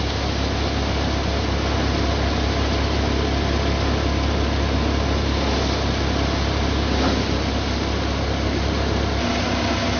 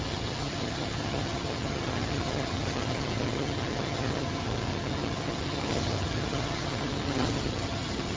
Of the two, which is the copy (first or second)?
second